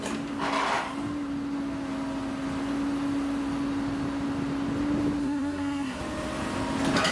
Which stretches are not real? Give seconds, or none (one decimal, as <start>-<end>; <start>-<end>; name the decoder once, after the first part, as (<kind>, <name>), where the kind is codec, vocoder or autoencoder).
5.2-6.0 (codec, SNAC)